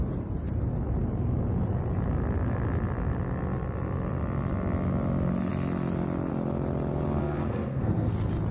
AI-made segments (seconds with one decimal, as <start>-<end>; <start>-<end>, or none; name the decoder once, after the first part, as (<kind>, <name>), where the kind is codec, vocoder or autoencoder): 7.2-8.1 (codec, SNAC)